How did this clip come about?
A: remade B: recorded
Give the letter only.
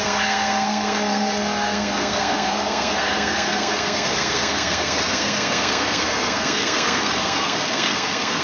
A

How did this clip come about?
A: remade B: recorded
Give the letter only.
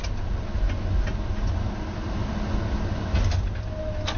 B